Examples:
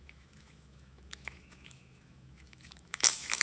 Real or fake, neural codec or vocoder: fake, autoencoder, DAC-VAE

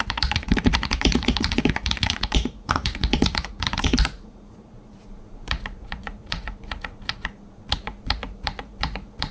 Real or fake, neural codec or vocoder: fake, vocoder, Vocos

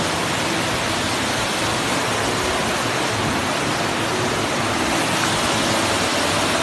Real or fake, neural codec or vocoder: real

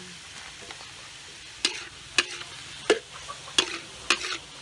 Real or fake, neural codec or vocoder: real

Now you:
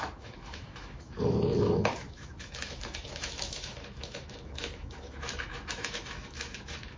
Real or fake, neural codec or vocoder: fake, autoencoder, DAC-VAE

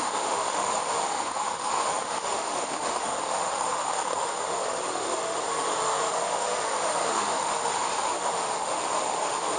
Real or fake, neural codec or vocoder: fake, autoencoder, DAC-VAE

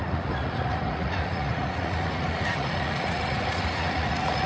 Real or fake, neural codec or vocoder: fake, vocoder, Vocos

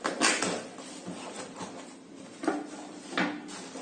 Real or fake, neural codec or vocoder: real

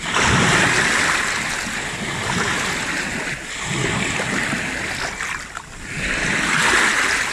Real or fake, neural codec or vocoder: real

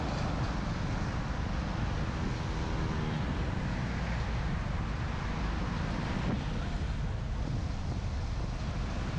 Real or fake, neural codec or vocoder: real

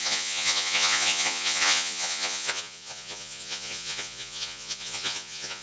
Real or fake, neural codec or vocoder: fake, vocoder, Vocos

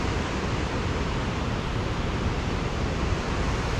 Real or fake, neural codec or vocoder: fake, vocoder, BigVGAN v2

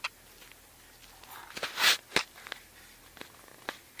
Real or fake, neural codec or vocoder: real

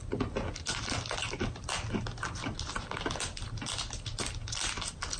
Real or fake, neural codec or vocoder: real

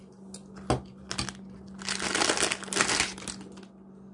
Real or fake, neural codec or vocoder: real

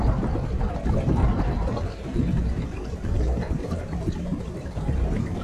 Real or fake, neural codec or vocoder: fake, vocoder, BigVGAN v2